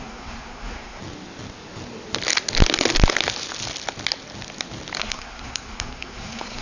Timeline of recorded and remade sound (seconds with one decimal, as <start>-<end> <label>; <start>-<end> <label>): 0.0-1.0 remade; 1.0-5.0 recorded; 5.0-6.6 remade